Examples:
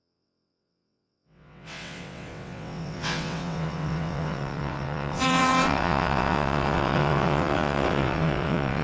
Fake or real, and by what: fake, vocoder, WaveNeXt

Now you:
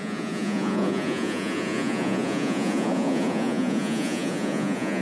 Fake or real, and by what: fake, vocoder, Vocos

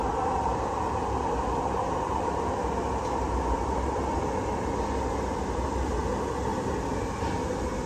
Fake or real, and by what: real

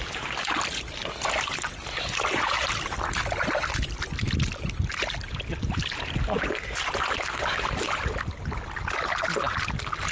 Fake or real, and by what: real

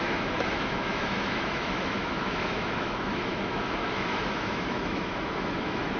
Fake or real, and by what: fake, autoencoder, DAC-VAE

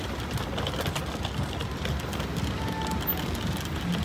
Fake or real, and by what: real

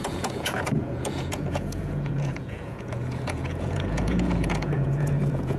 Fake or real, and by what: fake, vocoder, Vocos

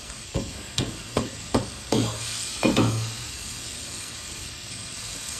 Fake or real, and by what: fake, codec, SNAC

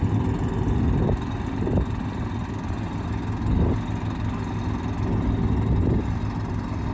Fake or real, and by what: real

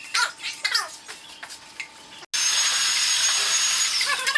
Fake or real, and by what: real